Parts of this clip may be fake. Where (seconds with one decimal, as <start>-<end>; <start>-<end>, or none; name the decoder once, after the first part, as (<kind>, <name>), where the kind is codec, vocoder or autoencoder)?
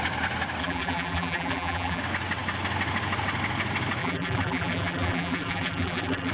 0.6-2.0 (vocoder, BigVGAN v2); 4.0-6.3